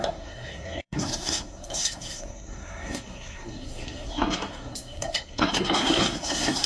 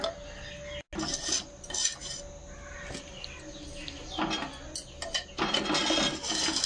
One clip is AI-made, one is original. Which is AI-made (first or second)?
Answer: first